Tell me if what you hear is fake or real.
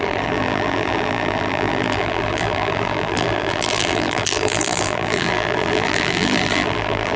fake